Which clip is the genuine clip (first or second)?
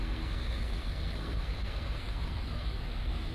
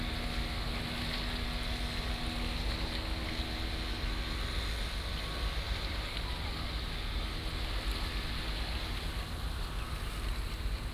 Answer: second